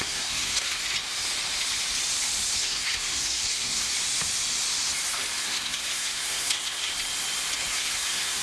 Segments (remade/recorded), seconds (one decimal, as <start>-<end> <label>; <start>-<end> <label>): 0.0-0.8 remade; 0.8-2.5 recorded; 2.5-3.9 remade; 3.9-5.4 recorded; 5.4-6.9 remade; 6.9-7.7 recorded; 7.7-8.4 remade